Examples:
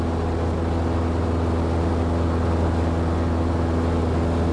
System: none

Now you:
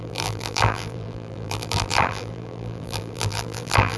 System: vocoder, BigVGAN v2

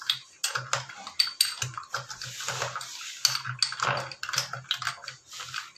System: none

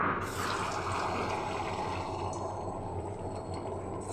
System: none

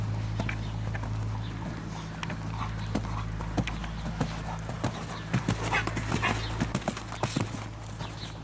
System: none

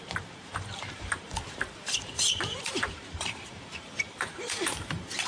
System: vocoder, BigVGAN v2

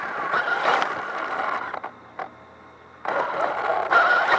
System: vocoder, BigVGAN v2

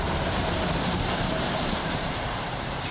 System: vocoder, BigVGAN v2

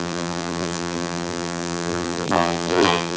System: vocoder, BigVGAN v2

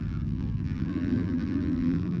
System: vocoder, BigVGAN v2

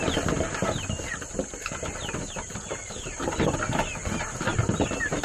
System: none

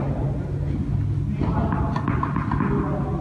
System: none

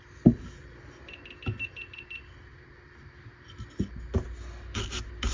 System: none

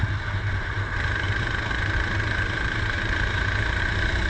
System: none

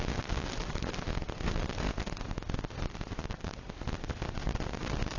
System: none